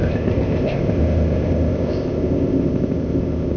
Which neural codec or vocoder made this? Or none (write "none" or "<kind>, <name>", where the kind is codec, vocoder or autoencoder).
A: codec, ZipCodec